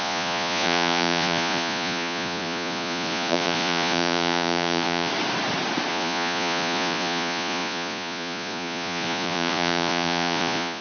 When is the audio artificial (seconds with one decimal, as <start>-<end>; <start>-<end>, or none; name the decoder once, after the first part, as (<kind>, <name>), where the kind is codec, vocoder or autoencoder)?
0.0-5.1 (vocoder, Vocos); 5.9-10.8